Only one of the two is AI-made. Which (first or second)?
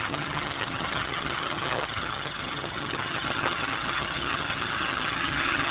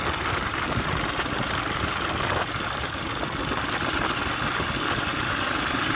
first